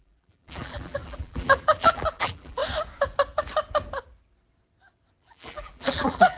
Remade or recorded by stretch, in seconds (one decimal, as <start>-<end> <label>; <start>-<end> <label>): 0.0-2.6 remade; 2.6-5.2 recorded; 5.2-6.4 remade